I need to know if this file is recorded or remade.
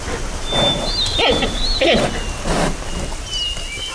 recorded